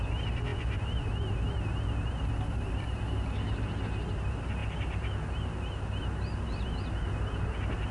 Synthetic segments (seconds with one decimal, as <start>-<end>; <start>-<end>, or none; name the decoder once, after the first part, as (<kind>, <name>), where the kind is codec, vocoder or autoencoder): none